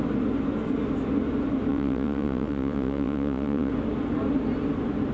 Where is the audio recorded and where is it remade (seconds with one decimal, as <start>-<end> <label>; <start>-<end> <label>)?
0.0-1.7 recorded; 1.7-3.7 remade; 3.7-5.1 recorded